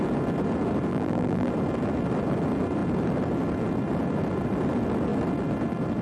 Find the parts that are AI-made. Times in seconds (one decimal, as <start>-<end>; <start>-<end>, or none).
0.9-1.5